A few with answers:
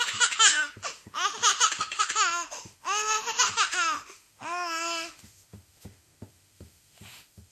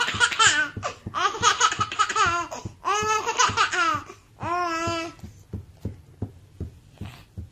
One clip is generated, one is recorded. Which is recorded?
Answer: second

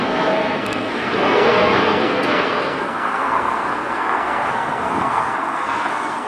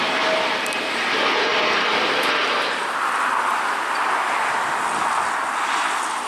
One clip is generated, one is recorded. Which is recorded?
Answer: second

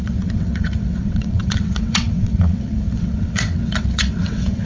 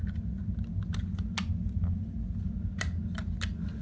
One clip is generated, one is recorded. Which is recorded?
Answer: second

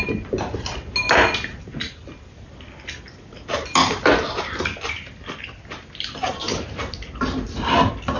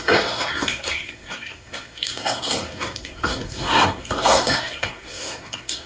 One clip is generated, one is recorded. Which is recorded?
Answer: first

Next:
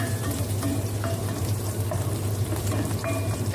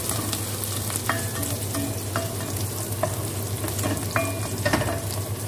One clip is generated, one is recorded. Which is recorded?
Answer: second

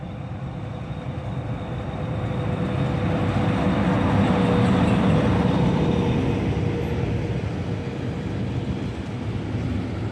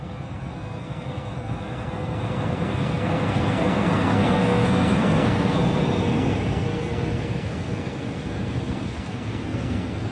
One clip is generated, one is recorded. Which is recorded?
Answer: first